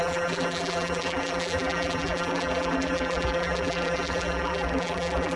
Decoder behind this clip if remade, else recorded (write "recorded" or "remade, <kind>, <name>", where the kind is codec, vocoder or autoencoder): remade, vocoder, BigVGAN v2